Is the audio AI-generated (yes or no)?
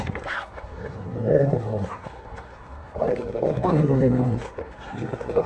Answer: yes